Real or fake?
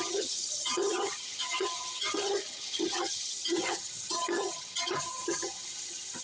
fake